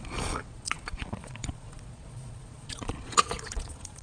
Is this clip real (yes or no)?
no